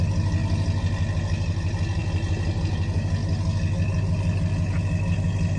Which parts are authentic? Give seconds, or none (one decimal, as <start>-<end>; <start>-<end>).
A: 0.0-5.6